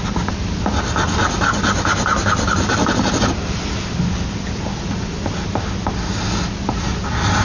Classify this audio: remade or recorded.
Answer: recorded